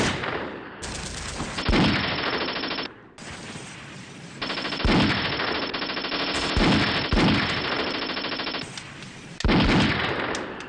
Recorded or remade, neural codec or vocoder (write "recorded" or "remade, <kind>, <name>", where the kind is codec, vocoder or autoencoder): recorded